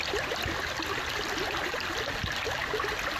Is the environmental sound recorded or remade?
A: recorded